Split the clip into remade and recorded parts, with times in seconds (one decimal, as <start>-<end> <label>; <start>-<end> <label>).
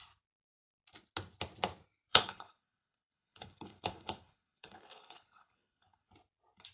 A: 0.0-2.1 recorded; 2.1-6.1 remade; 6.1-6.7 recorded